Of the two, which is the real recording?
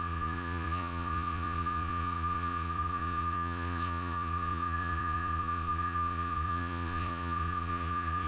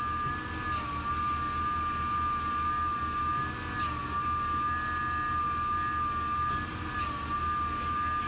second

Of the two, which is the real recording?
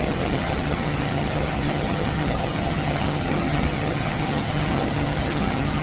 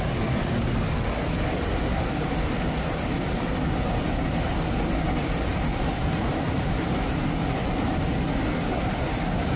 second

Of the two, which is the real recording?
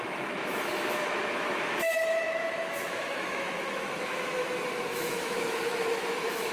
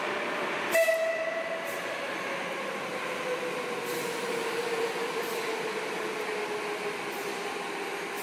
second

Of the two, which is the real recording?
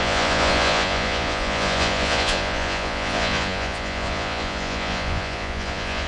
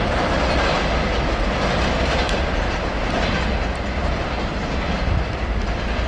second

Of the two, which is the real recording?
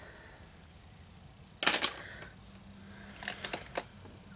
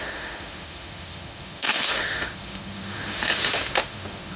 first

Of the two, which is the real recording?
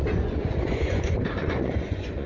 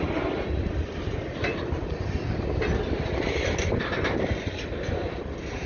second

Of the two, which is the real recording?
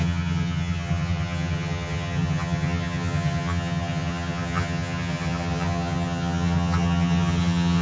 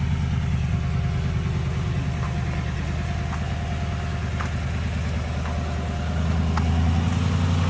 second